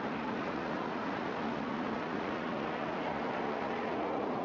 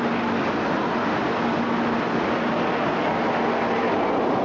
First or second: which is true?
second